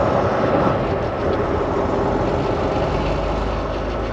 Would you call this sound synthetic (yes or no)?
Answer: no